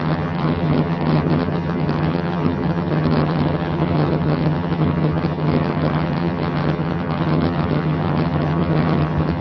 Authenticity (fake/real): fake